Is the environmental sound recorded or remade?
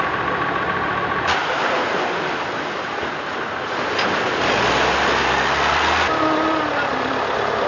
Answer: recorded